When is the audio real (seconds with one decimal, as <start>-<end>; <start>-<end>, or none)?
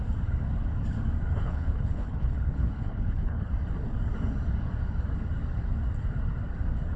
0.0-1.4; 3.5-7.0